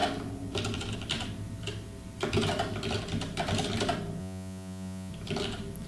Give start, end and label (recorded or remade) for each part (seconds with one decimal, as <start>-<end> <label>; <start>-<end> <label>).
0.0-4.2 recorded; 4.2-5.1 remade; 5.1-5.9 recorded